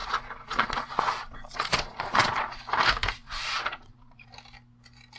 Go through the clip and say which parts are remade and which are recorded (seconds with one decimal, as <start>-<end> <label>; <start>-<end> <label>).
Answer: 0.0-2.6 remade; 2.6-3.2 recorded; 3.2-4.3 remade; 4.3-5.2 recorded